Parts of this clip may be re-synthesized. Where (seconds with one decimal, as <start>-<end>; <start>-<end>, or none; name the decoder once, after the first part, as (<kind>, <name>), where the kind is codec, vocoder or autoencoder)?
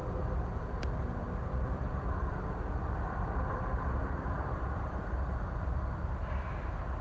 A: 1.2-5.4 (vocoder, BigVGAN v2)